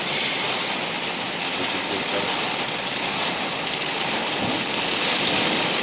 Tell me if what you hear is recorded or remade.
remade